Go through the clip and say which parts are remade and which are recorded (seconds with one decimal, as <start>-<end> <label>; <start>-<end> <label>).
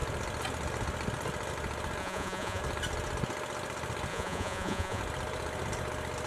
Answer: 0.0-2.0 recorded; 2.0-2.6 remade; 2.6-4.1 recorded; 4.1-5.0 remade; 5.0-6.3 recorded